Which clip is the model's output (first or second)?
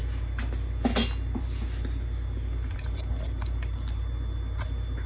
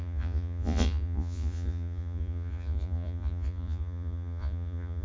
second